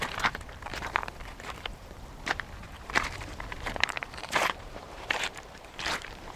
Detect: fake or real fake